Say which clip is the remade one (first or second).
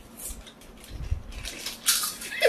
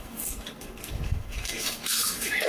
second